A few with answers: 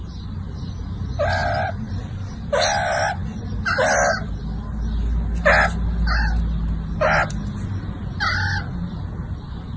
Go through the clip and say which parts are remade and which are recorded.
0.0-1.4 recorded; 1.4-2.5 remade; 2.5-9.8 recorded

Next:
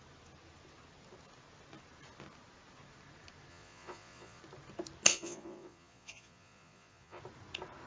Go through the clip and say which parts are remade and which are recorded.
0.0-3.5 recorded; 3.5-4.4 remade; 4.4-5.1 recorded; 5.1-7.2 remade; 7.2-7.9 recorded

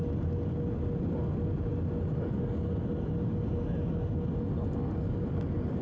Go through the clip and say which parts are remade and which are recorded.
0.0-5.8 recorded

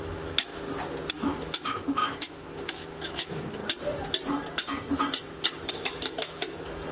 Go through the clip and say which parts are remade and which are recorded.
0.0-0.5 remade; 0.5-1.1 recorded; 1.1-3.6 remade; 3.6-5.7 recorded; 5.7-6.9 remade

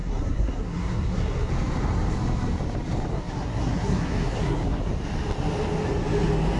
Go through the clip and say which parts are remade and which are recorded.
0.0-1.5 remade; 1.5-3.1 recorded; 3.1-4.8 remade; 4.8-6.6 recorded